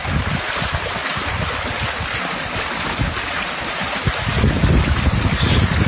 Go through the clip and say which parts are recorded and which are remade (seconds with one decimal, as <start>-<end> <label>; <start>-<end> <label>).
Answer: 0.0-5.9 recorded